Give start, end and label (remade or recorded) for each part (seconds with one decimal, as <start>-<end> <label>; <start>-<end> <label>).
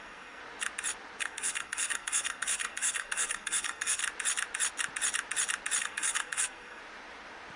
0.0-0.4 remade; 0.4-1.2 recorded; 1.2-4.0 remade; 4.0-5.8 recorded; 5.8-6.8 remade; 6.8-7.6 recorded